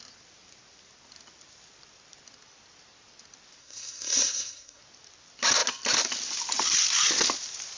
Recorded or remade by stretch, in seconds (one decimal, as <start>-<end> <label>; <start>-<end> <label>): 0.0-3.6 recorded; 3.6-4.8 remade; 4.8-7.8 recorded